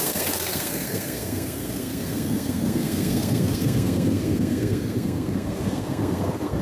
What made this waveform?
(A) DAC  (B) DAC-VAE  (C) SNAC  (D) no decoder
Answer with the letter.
C